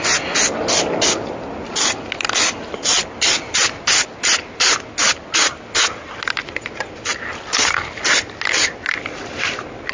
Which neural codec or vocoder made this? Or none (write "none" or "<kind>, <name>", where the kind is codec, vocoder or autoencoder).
none